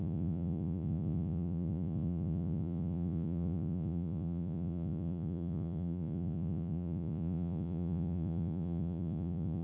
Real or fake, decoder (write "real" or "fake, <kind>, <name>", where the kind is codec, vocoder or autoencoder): fake, vocoder, Vocos